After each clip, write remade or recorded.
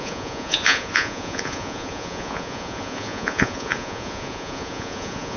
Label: remade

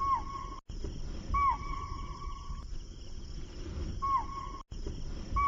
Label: recorded